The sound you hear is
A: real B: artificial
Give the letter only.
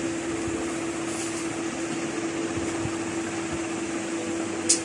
A